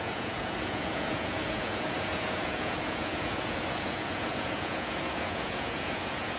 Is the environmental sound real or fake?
fake